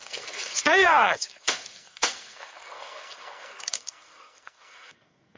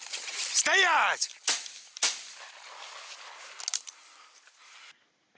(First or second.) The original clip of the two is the second